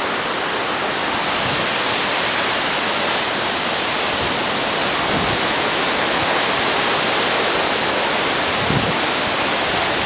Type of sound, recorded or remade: recorded